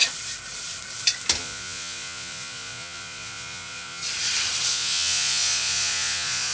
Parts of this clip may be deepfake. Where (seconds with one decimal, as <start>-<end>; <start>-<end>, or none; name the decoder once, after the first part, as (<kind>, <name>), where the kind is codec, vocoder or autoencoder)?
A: 1.4-4.0 (vocoder, Vocos); 4.7-6.5